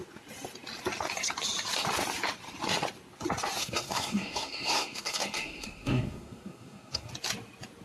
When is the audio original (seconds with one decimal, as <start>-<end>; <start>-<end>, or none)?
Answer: 0.0-3.6; 7.1-7.8